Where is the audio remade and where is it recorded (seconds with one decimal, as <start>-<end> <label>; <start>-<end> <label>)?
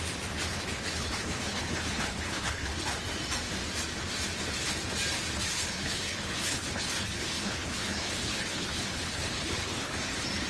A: 0.0-0.5 recorded; 0.5-2.8 remade; 2.8-5.5 recorded; 5.5-10.1 remade; 10.1-10.5 recorded